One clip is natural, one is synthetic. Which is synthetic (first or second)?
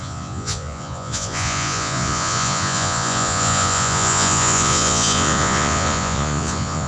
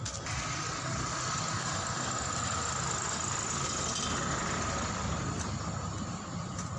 first